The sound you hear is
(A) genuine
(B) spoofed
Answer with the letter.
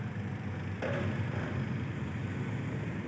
A